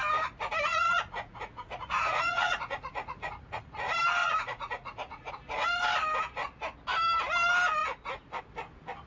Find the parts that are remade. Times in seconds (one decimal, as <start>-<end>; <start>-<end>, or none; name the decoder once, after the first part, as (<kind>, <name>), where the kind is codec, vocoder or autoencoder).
0.7-3.6 (vocoder, Vocos); 4.2-5.3